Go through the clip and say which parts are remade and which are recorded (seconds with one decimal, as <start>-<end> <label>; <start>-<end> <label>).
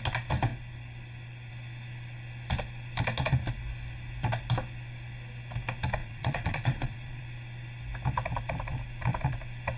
0.0-6.0 recorded; 6.0-7.2 remade; 7.2-9.8 recorded